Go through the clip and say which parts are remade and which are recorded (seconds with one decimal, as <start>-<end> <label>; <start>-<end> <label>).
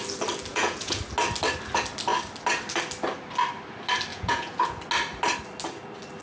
0.0-0.5 recorded; 0.5-1.0 remade; 1.0-4.1 recorded; 4.1-4.8 remade; 4.8-6.2 recorded